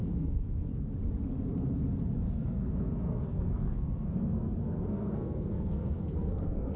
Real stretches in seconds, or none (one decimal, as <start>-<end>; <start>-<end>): 0.7-2.3